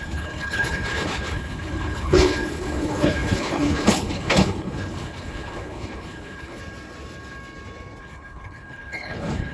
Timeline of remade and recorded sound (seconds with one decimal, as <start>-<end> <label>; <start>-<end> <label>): 0.0-6.6 remade; 6.6-8.0 recorded; 8.0-9.5 remade